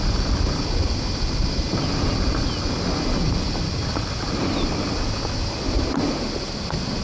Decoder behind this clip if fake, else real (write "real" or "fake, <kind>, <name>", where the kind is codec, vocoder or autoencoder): real